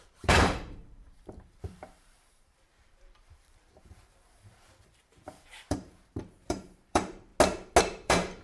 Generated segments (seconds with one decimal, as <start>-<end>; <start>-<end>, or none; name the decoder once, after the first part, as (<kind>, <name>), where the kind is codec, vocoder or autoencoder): 0.0-7.3 (vocoder, BigVGAN v2); 7.8-8.4